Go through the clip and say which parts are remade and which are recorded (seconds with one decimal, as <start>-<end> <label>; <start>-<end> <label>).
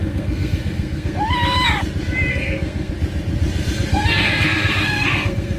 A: 0.0-1.2 remade; 1.2-2.3 recorded; 2.3-2.9 remade; 2.9-3.9 recorded; 3.9-5.6 remade